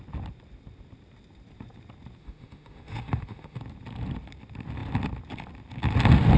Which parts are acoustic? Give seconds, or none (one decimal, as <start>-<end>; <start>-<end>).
0.0-2.2; 3.6-6.4